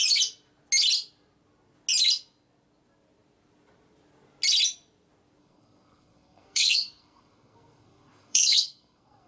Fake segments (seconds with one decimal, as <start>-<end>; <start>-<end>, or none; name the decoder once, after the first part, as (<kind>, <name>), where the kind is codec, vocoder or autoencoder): 5.4-9.3 (codec, SNAC)